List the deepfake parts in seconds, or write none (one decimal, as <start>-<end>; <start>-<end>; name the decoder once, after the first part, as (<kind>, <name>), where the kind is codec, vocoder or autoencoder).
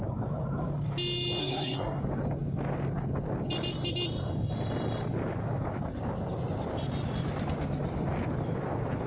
1.4-2.0 (codec, SNAC)